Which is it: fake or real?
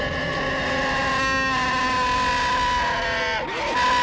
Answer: real